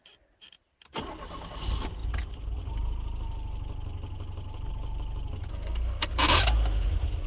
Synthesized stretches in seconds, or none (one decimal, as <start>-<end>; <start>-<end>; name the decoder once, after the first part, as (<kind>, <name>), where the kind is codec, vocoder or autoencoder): 5.5-6.1 (codec, SNAC)